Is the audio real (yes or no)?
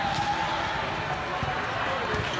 yes